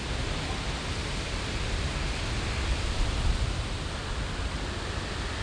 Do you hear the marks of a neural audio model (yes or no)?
no